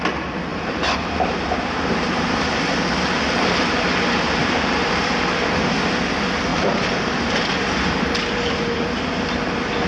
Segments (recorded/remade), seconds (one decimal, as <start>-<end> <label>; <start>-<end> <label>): 0.0-0.5 recorded; 0.5-2.5 remade; 2.5-4.4 recorded; 4.4-5.0 remade; 5.0-6.5 recorded; 6.5-8.9 remade; 8.9-9.9 recorded